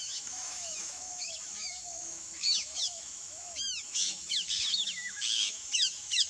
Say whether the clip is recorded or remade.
remade